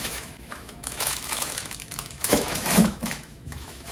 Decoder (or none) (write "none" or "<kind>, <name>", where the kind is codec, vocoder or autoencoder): autoencoder, DAC-VAE